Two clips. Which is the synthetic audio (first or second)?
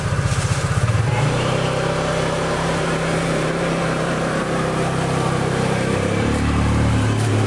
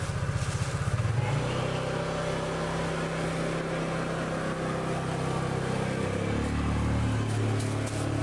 first